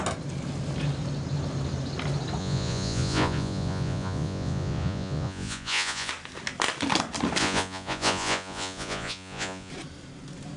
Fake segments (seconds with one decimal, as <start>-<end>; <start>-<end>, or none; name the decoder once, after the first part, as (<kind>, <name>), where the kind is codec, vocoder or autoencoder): 2.4-6.1 (vocoder, Vocos); 7.4-9.7